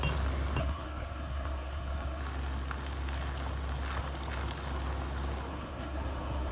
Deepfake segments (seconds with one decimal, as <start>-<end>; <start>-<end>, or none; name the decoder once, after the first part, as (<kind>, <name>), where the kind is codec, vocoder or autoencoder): 0.6-2.2 (codec, SNAC); 5.5-6.5